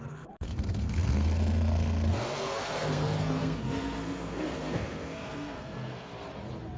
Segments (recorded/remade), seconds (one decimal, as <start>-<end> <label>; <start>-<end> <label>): 0.0-6.1 remade; 6.1-6.8 recorded